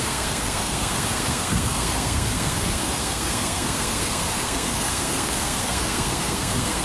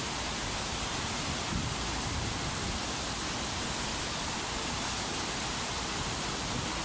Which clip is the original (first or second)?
second